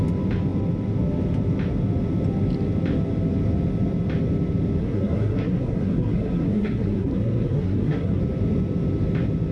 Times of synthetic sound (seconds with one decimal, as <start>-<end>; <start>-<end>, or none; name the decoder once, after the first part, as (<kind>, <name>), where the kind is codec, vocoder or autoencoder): 4.8-8.2 (codec, SNAC)